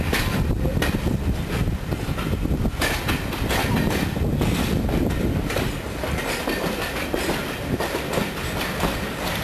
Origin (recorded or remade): recorded